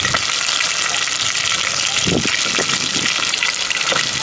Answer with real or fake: real